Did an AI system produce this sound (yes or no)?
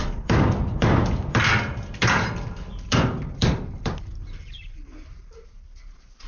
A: yes